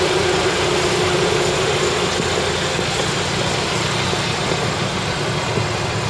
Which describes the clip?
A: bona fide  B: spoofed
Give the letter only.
A